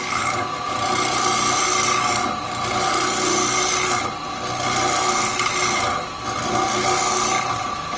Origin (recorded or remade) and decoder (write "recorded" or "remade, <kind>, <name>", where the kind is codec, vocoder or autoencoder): recorded